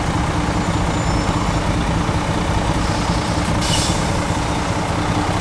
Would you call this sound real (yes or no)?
yes